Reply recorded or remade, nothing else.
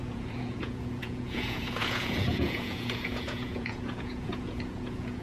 remade